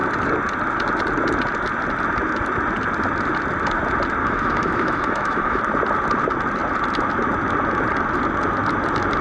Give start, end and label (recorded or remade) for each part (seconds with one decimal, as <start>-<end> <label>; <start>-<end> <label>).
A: 0.0-4.2 recorded; 4.2-5.6 remade; 5.6-9.2 recorded